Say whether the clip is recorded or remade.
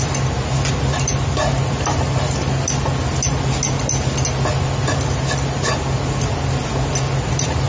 recorded